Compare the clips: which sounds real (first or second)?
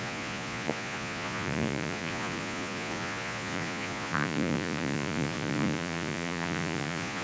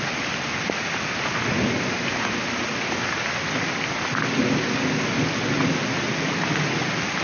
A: second